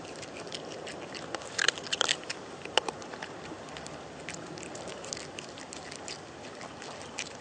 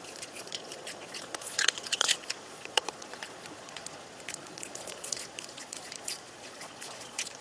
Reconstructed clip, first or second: second